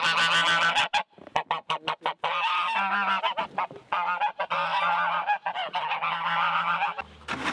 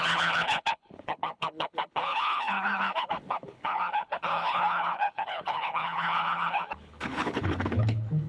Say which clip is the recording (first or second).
first